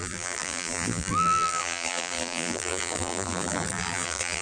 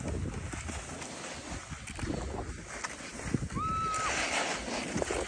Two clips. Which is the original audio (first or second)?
second